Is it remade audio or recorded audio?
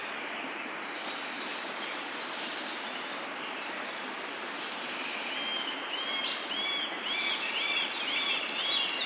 recorded